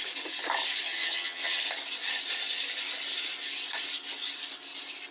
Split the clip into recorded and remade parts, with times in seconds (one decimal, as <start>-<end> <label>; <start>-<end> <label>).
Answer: 0.0-0.9 recorded; 0.9-1.6 remade; 1.6-5.1 recorded

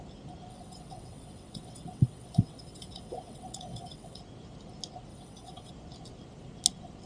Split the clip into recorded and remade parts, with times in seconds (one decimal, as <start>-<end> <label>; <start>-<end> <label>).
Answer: 0.0-0.5 recorded; 0.5-4.2 remade; 4.2-5.1 recorded; 5.1-5.7 remade; 5.7-7.1 recorded

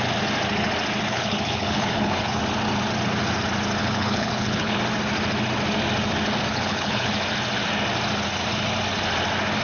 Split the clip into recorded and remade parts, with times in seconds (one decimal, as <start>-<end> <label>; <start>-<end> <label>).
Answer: 0.0-1.1 recorded; 1.1-2.4 remade; 2.4-3.8 recorded; 3.8-4.8 remade; 4.8-6.5 recorded; 6.5-7.1 remade; 7.1-9.6 recorded

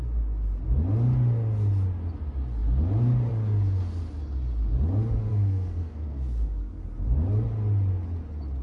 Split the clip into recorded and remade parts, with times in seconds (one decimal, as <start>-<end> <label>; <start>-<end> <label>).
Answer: 0.0-5.3 recorded; 5.3-6.8 remade; 6.8-8.6 recorded